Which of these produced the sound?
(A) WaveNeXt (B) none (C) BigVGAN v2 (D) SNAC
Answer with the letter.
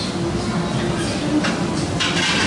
B